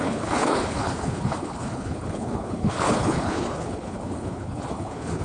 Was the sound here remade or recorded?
remade